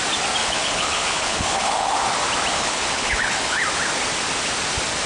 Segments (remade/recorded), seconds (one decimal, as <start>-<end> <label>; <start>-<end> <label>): 0.0-0.4 recorded; 0.4-1.9 remade; 1.9-2.5 recorded; 2.5-3.6 remade; 3.6-5.1 recorded